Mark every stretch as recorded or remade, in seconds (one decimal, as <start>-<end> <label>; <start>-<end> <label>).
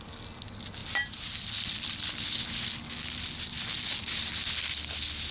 0.0-5.3 recorded